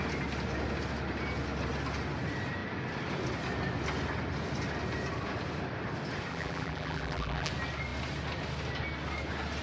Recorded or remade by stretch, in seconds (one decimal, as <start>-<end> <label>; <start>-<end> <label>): 0.0-6.3 recorded; 6.3-7.5 remade; 7.5-9.6 recorded